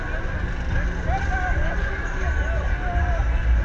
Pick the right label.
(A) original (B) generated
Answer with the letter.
A